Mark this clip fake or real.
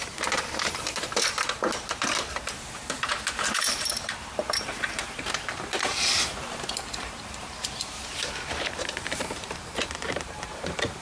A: fake